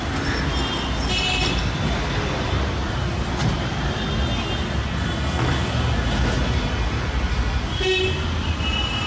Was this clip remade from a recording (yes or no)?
no